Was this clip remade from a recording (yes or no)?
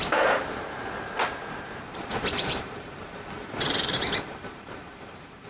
yes